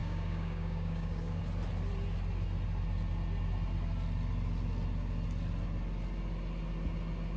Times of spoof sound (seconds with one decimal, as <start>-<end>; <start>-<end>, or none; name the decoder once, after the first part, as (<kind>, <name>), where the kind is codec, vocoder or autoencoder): 0.0-1.4 (codec, DAC)